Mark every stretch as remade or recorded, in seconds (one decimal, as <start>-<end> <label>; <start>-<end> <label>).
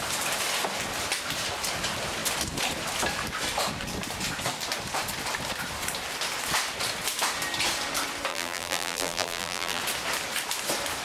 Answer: 0.0-8.3 recorded; 8.3-9.8 remade; 9.8-11.0 recorded